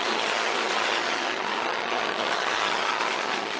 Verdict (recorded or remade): remade